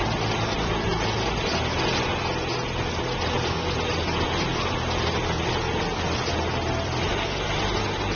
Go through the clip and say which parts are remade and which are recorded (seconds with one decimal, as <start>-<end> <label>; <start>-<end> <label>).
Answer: 0.0-8.2 recorded